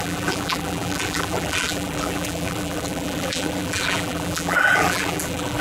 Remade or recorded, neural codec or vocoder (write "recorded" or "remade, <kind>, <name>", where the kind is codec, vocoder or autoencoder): remade, vocoder, BigVGAN v2